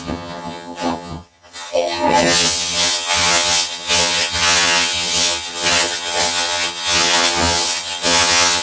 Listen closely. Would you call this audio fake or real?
fake